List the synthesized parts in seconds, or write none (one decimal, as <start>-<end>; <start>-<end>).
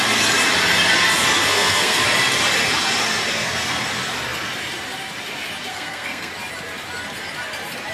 1.4-2.0; 5.7-6.3